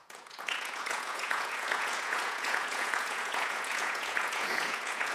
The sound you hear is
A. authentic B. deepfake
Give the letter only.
B